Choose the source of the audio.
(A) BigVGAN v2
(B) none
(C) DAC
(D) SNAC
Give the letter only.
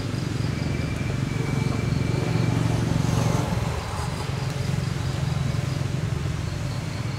B